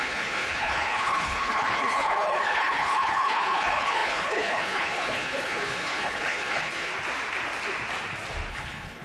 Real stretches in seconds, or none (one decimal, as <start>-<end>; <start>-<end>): 6.9-8.5